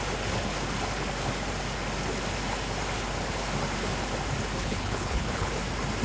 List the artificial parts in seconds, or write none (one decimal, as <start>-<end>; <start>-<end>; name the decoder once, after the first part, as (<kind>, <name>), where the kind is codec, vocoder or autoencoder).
4.6-5.5 (codec, HILCodec)